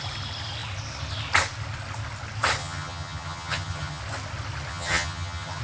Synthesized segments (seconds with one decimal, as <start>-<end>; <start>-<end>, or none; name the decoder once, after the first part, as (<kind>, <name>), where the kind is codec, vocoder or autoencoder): 2.6-4.0 (vocoder, HiFi-GAN); 4.7-5.6